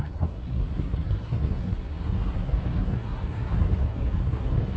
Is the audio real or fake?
fake